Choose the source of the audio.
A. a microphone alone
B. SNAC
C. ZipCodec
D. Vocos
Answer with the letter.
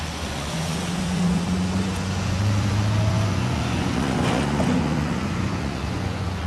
D